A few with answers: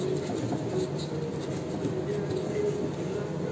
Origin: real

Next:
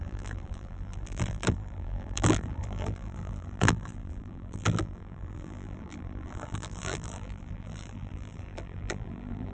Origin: fake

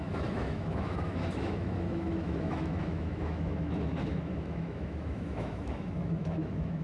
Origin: fake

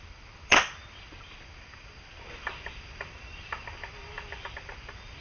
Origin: real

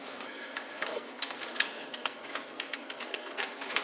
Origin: fake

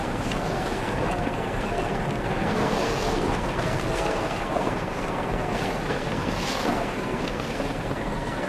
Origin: fake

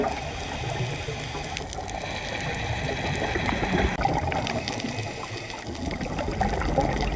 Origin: real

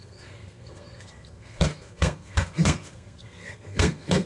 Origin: fake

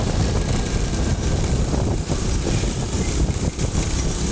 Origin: real